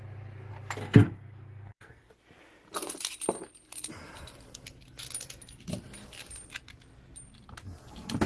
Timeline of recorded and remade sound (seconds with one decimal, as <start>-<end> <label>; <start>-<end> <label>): 0.0-0.8 recorded; 0.8-2.1 remade; 2.1-8.3 recorded